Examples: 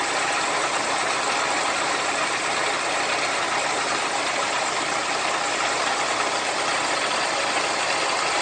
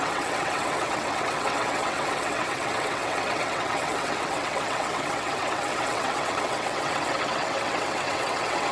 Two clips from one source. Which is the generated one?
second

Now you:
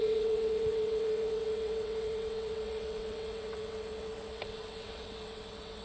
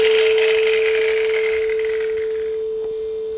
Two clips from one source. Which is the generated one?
first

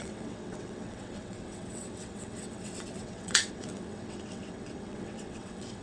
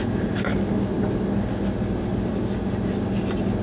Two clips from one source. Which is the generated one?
first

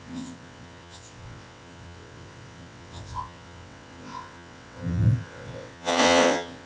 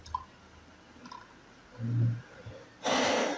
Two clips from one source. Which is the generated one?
first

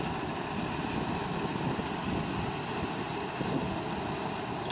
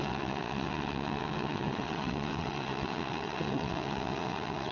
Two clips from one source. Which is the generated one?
second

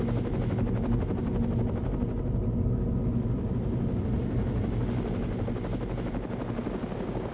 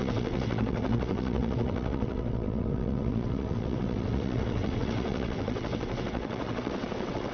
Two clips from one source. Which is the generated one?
second